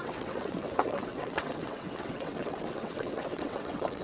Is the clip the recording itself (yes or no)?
no